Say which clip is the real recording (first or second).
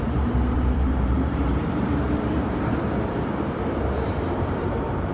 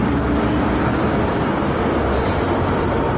second